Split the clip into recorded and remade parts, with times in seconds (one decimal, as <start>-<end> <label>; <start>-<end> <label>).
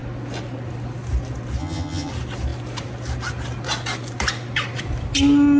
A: 0.0-1.6 recorded; 1.6-2.1 remade; 2.1-5.6 recorded